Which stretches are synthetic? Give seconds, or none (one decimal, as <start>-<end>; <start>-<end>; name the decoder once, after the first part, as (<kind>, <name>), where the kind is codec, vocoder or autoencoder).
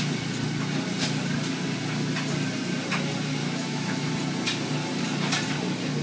3.4-4.1 (autoencoder, DAC-VAE)